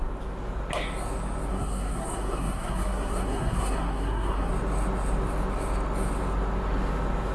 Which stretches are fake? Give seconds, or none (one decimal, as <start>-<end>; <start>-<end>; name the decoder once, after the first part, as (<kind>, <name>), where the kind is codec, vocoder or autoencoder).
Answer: 1.5-4.5 (codec, SNAC)